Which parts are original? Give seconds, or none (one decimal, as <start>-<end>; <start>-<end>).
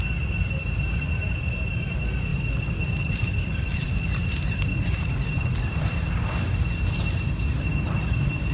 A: 0.0-2.3; 5.8-8.5